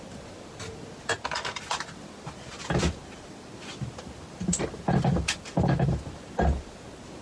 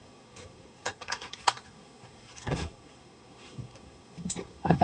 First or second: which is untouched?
first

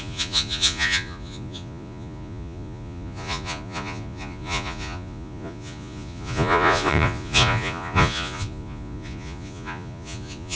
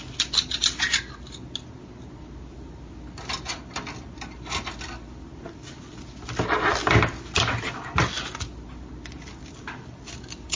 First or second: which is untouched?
second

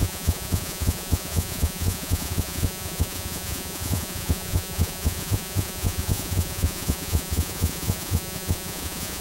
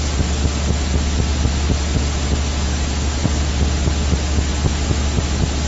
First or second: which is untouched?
second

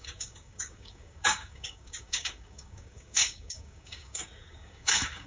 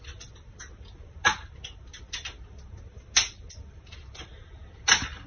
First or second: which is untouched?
second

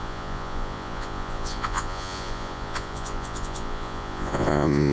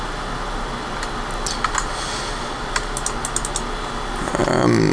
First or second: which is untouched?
second